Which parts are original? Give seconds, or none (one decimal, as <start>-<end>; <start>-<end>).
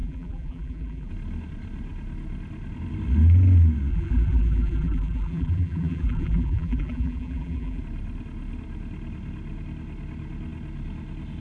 1.1-3.9; 7.8-11.4